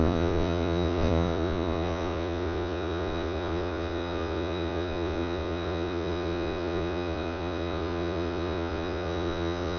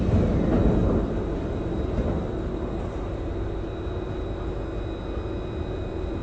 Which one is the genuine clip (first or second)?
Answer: second